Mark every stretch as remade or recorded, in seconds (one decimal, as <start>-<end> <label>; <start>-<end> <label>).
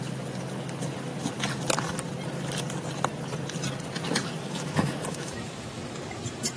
0.0-4.4 recorded; 4.4-5.8 remade; 5.8-6.6 recorded